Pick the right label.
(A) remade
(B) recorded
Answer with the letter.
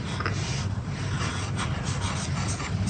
B